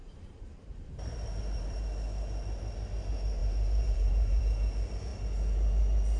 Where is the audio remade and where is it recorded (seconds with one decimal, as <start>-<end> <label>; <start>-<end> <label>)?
0.0-1.8 remade; 1.8-3.4 recorded; 3.4-4.4 remade; 4.4-6.2 recorded